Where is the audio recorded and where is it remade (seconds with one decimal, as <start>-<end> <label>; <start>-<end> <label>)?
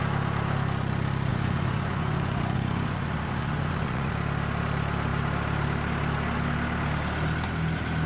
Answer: 0.0-1.3 recorded; 1.3-4.1 remade; 4.1-8.1 recorded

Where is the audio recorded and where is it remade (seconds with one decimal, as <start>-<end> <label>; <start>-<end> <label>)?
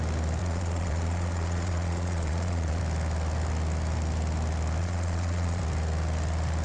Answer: 0.0-0.4 recorded; 0.4-2.8 remade; 2.8-4.8 recorded; 4.8-5.6 remade; 5.6-6.6 recorded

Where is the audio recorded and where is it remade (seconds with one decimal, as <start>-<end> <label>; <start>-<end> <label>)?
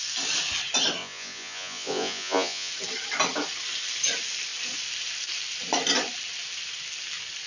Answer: 0.0-1.0 recorded; 1.0-2.7 remade; 2.7-7.5 recorded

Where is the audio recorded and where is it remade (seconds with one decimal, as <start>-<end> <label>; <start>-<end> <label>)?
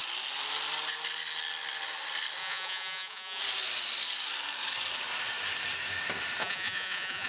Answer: 0.0-2.4 recorded; 2.4-3.4 remade; 3.4-6.4 recorded; 6.4-7.3 remade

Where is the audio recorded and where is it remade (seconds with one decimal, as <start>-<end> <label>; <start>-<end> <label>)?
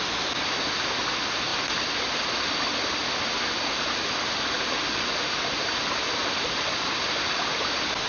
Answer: 0.0-8.1 recorded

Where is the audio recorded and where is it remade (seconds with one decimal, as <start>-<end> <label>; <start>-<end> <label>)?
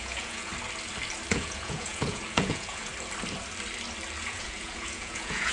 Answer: 0.0-0.5 remade; 0.5-1.3 recorded; 1.3-2.9 remade; 2.9-4.2 recorded; 4.2-5.5 remade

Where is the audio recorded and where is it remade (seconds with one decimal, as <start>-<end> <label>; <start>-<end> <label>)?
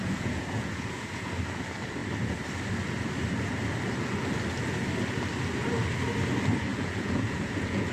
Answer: 0.0-1.3 remade; 1.3-6.7 recorded; 6.7-7.9 remade